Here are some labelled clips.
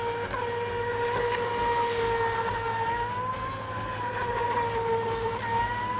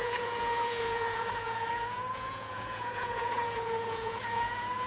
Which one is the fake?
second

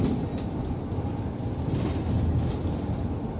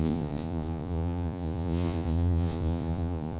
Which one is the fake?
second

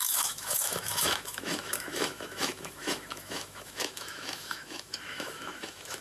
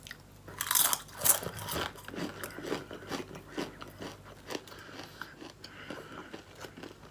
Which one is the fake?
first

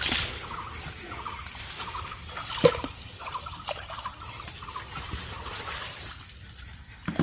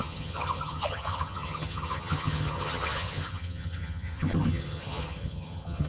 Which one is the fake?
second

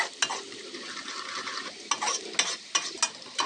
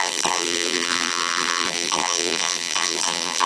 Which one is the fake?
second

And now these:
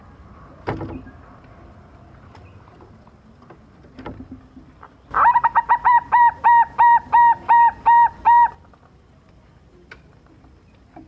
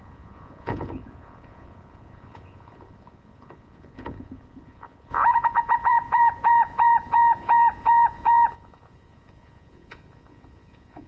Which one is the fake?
second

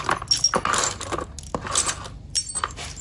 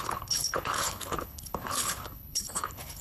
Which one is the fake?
second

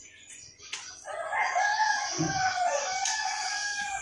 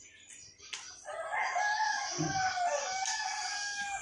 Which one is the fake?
first